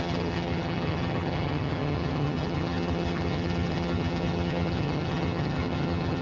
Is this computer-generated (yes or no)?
yes